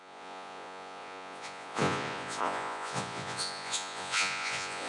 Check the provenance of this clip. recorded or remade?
remade